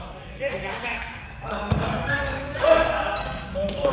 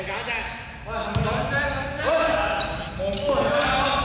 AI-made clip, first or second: first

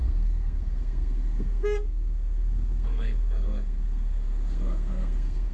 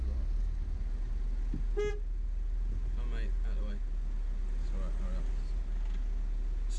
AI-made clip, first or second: first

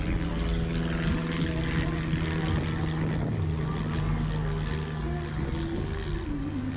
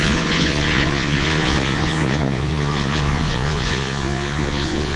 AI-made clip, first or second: second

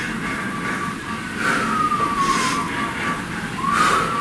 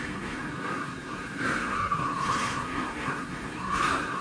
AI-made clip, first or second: second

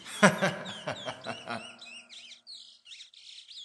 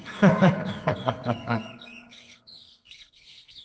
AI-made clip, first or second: second